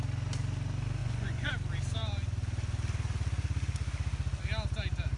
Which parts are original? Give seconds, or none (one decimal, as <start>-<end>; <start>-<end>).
0.0-1.0; 1.5-5.2